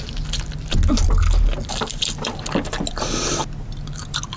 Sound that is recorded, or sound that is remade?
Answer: recorded